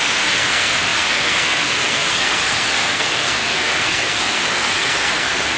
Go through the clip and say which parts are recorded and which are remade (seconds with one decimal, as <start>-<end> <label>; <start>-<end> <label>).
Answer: 0.0-5.6 remade